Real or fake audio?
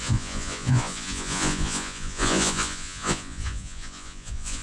fake